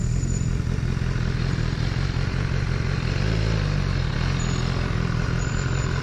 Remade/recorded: recorded